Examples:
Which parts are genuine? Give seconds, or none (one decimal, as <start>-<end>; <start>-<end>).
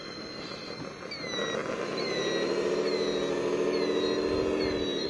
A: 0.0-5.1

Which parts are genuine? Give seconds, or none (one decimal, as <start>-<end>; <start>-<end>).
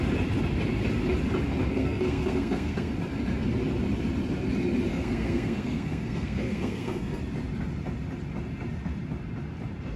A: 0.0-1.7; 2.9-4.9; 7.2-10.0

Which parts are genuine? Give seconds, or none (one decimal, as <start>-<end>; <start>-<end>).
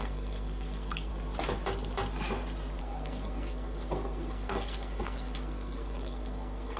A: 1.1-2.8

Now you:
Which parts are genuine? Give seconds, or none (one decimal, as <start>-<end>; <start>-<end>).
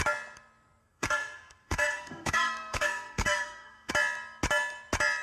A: 0.0-0.8; 3.9-5.2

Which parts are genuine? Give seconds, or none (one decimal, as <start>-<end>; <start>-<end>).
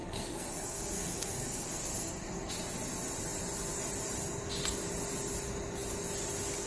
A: 2.5-6.7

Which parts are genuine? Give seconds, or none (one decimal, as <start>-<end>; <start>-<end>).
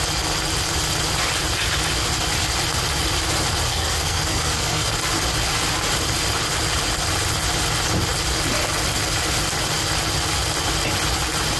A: 0.0-3.7; 4.9-11.6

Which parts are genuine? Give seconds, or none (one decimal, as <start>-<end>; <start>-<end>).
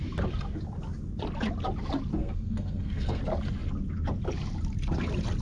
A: 0.0-2.2; 3.2-5.4